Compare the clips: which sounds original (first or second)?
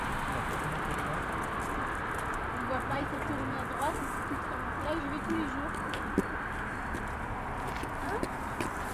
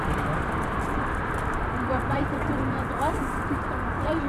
first